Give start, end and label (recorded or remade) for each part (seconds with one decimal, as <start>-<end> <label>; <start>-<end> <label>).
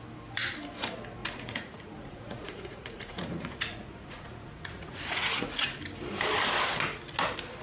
0.0-1.2 recorded; 1.2-5.8 remade; 5.8-7.6 recorded